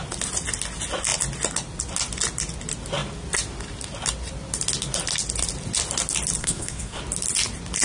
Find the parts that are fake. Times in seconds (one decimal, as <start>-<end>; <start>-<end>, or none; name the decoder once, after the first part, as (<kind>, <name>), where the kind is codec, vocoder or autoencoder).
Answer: 6.4-7.0 (codec, SNAC)